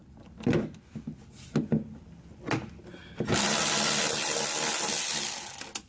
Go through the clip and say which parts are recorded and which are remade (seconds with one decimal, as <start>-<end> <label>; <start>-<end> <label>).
0.0-5.9 recorded

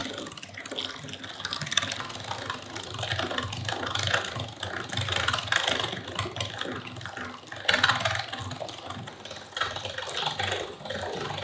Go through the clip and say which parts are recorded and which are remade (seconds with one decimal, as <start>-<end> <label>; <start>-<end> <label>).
0.0-11.4 recorded